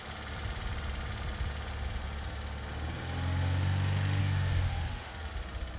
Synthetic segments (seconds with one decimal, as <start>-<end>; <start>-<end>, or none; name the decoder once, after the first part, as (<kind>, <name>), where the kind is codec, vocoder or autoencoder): 4.2-5.1 (autoencoder, DAC-VAE)